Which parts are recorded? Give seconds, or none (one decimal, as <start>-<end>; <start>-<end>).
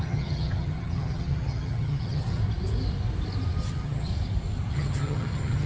2.4-3.6; 4.1-4.7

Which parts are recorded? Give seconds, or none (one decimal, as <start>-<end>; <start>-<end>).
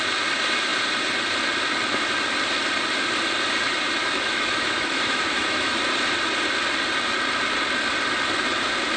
0.0-4.0; 5.8-9.0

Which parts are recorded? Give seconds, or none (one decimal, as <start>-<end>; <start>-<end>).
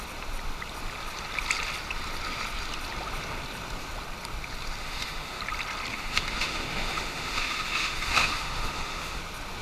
0.0-4.8; 5.4-5.9; 9.2-9.6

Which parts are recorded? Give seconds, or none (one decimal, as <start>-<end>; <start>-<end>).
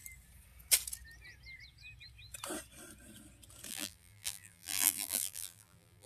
0.0-3.7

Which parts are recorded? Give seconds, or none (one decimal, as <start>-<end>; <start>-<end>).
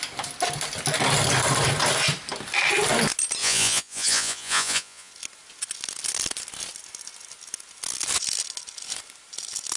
0.0-3.4; 5.1-9.8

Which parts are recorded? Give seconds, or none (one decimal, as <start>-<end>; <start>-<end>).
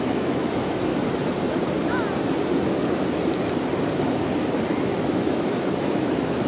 0.9-4.8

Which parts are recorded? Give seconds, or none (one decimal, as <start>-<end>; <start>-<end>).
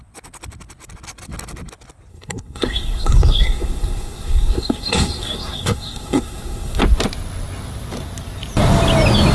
0.0-2.1; 6.8-9.3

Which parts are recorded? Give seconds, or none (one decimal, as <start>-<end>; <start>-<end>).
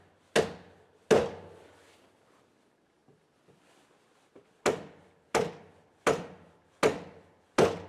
0.0-7.9